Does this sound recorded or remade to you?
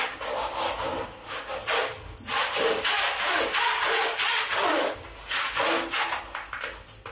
recorded